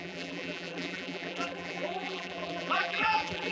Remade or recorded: remade